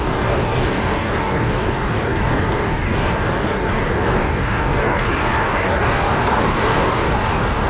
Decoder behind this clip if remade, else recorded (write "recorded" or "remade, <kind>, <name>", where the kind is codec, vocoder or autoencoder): remade, codec, DAC